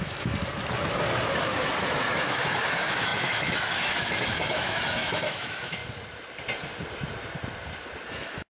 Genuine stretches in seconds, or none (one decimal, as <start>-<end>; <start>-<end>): 0.4-1.8; 5.8-8.1